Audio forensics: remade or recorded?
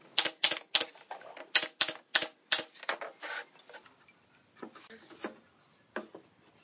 recorded